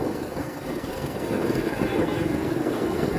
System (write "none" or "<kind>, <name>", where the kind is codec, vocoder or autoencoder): codec, SNAC